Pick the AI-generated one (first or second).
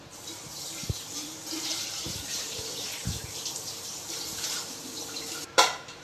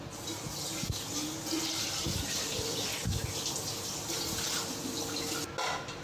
first